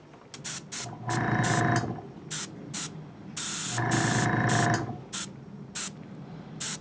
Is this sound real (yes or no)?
yes